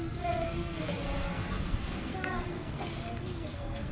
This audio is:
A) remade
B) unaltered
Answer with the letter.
A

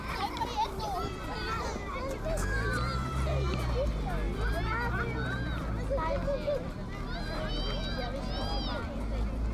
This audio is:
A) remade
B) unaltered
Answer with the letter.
B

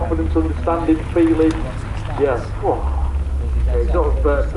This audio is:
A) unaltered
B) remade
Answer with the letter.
A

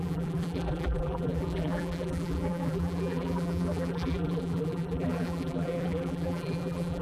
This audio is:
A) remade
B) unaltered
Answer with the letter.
A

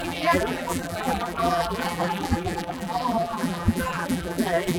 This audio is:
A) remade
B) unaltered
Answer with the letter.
A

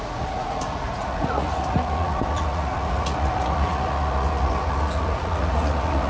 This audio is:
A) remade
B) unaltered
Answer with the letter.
A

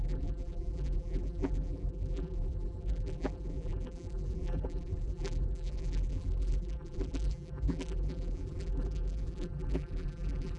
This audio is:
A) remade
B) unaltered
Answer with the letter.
A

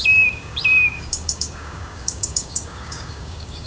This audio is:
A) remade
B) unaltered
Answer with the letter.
A